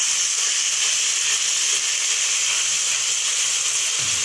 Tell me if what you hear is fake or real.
real